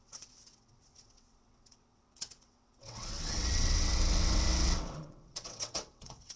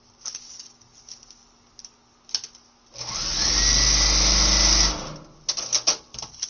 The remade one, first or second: first